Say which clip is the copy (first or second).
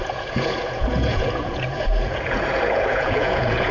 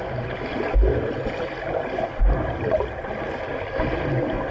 first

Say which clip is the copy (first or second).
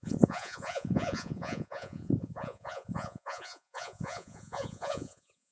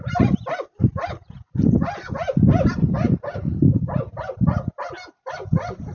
first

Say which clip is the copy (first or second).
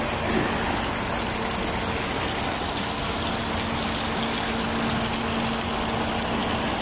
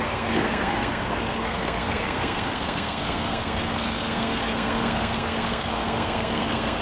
second